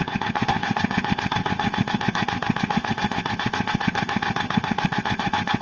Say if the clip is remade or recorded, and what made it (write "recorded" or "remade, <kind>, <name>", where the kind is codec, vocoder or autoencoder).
remade, codec, ZipCodec